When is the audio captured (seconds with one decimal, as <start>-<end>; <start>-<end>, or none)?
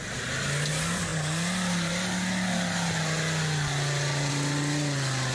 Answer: 0.0-5.3